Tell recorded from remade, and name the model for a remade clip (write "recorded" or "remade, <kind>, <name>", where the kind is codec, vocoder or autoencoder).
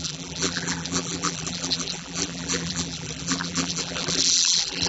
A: remade, vocoder, BigVGAN v2